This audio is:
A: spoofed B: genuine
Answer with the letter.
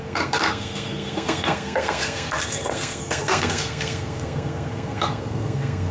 A